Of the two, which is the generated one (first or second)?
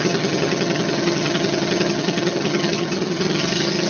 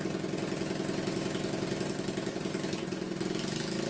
first